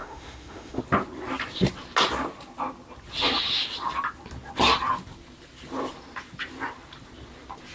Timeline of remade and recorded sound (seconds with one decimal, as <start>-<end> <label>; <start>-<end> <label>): 0.0-0.8 remade; 0.8-7.7 recorded

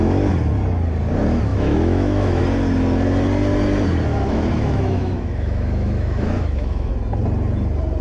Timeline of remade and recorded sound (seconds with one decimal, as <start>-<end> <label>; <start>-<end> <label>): 0.0-1.5 recorded; 1.5-2.4 remade; 2.4-4.1 recorded; 4.1-6.9 remade; 6.9-8.0 recorded

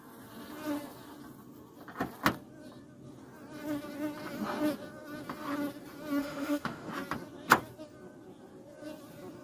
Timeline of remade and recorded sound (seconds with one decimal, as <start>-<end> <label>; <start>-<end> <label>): 0.0-6.2 recorded; 6.2-6.9 remade; 6.9-9.4 recorded

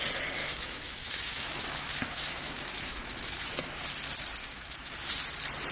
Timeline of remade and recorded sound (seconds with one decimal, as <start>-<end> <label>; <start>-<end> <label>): 0.0-0.4 recorded; 0.4-3.8 remade; 3.8-4.4 recorded; 4.4-4.9 remade; 4.9-5.7 recorded

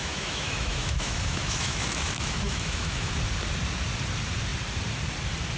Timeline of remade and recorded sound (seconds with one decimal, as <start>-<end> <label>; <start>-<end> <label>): 0.0-3.1 remade; 3.1-5.6 recorded